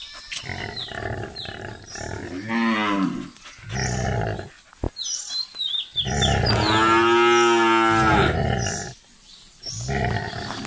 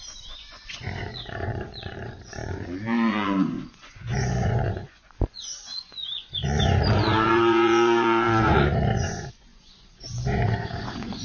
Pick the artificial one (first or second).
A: second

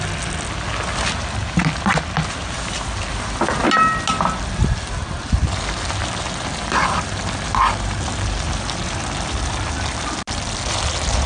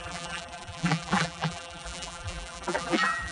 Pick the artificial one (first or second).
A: second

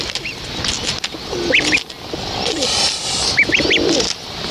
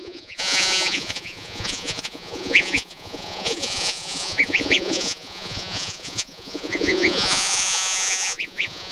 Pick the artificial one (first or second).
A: second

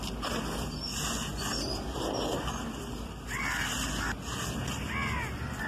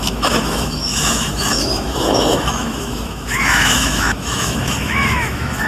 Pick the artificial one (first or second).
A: second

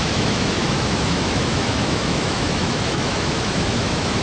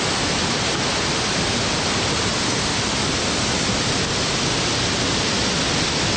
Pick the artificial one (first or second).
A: first